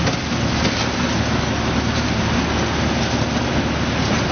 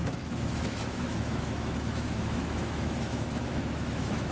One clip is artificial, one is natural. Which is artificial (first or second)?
second